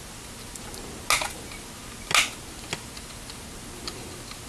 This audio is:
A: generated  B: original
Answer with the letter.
B